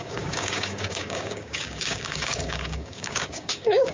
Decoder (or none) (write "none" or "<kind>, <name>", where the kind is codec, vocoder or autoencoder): codec, DAC